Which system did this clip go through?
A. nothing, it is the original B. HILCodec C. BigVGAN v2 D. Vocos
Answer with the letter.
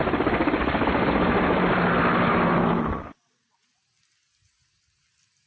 A